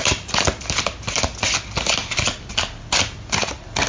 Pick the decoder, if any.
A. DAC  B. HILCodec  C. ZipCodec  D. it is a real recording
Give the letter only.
D